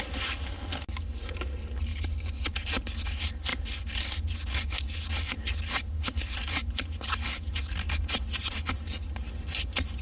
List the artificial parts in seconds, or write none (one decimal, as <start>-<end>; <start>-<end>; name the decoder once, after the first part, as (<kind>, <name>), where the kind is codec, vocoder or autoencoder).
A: none